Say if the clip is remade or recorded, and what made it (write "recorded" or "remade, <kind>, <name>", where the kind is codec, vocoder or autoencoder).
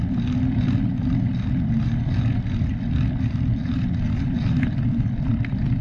recorded